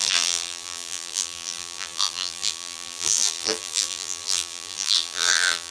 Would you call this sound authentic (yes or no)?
no